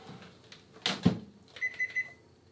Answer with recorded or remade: recorded